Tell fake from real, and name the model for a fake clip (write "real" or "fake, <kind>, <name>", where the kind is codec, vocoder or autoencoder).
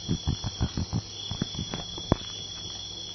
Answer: real